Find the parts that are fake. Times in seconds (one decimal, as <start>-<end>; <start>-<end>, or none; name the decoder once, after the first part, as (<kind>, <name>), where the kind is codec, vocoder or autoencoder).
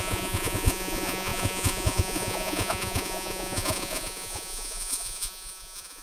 0.0-6.0 (vocoder, Vocos)